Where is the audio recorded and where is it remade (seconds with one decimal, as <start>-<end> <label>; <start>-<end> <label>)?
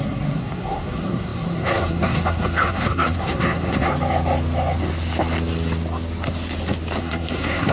0.0-3.9 remade; 3.9-7.0 recorded; 7.0-7.7 remade